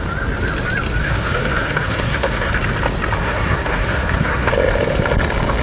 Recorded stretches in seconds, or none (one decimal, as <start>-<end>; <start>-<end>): 0.0-1.0; 2.5-3.2; 4.5-5.6